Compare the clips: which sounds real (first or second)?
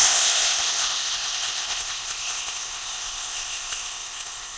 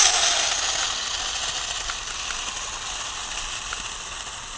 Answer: second